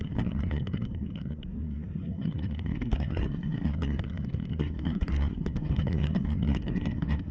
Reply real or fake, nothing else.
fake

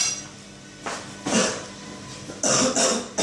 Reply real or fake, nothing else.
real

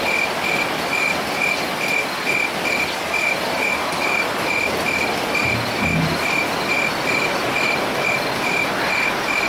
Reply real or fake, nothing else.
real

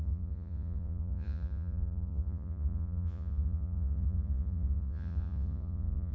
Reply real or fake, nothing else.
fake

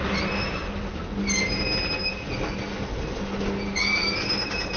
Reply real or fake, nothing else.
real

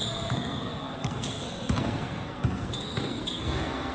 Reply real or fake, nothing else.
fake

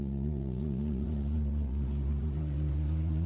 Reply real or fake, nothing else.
fake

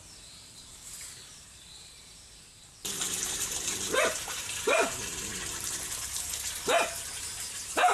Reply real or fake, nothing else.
fake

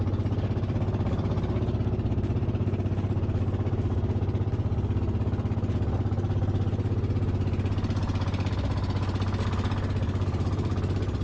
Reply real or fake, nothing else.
real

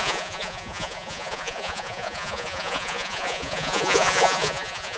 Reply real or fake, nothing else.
fake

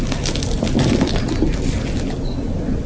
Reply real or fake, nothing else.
real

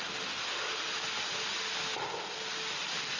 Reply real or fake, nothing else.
real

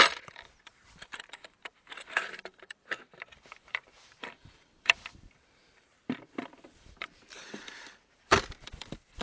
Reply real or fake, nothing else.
fake